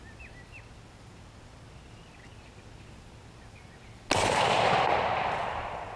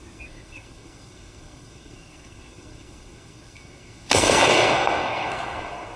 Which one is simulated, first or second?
second